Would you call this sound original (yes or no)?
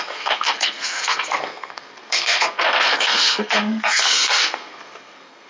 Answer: no